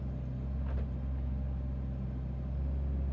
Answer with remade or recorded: recorded